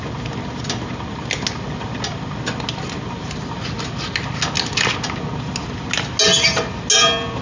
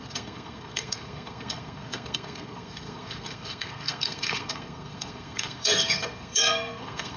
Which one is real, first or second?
first